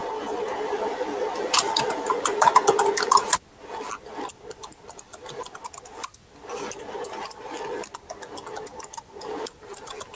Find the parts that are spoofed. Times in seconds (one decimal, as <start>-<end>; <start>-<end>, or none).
none